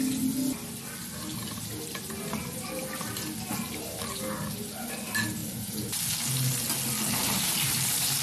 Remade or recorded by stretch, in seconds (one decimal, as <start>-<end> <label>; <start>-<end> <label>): 0.0-5.4 recorded; 5.4-6.0 remade; 6.0-7.2 recorded; 7.2-8.2 remade